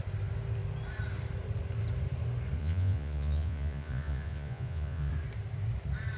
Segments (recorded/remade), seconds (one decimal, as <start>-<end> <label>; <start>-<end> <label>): 0.0-2.6 recorded; 2.6-5.1 remade; 5.1-6.2 recorded